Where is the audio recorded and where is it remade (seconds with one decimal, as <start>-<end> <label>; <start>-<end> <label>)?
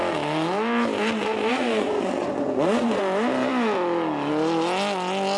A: 0.0-1.5 recorded; 1.5-3.0 remade; 3.0-5.4 recorded